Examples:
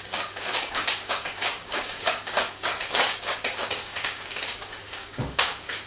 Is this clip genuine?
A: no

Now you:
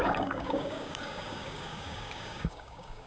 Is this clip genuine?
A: no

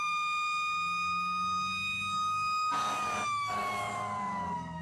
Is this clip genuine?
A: no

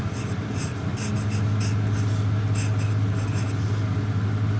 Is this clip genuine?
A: yes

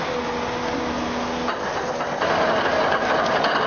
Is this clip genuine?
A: yes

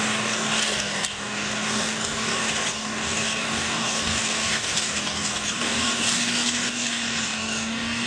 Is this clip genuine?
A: no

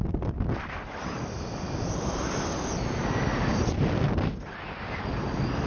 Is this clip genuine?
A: yes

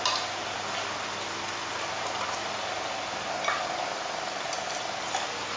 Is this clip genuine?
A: yes